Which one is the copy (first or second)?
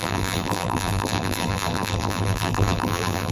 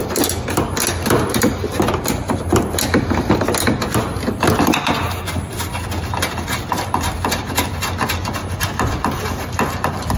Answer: first